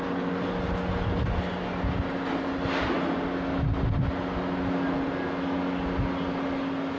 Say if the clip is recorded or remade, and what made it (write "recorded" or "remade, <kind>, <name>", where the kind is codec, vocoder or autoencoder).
recorded